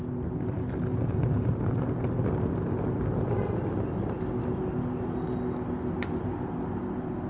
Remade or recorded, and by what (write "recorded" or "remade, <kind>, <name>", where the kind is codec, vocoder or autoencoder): recorded